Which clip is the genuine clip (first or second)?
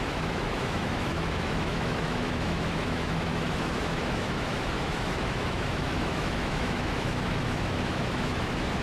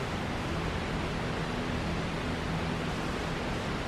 second